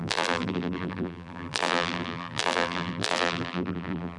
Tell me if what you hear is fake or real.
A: fake